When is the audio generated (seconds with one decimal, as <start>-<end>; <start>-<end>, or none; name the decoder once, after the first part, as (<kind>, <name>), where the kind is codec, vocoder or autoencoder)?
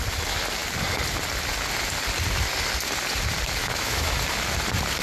3.6-4.1 (autoencoder, DAC-VAE)